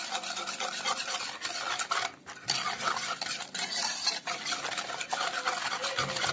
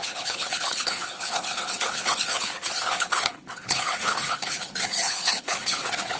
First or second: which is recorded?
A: first